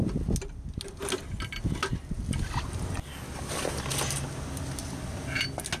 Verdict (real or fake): real